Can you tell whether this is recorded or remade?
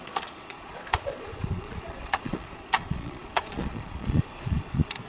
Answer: remade